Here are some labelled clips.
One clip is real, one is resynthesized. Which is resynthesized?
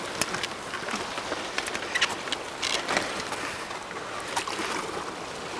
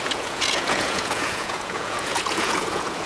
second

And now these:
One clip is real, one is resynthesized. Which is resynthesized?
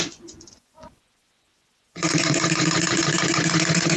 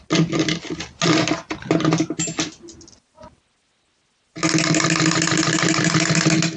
first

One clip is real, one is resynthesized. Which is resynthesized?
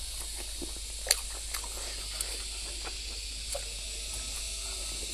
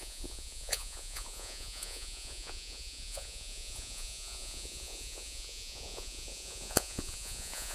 second